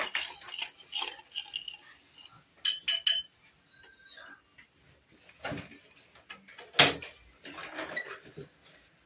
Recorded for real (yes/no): yes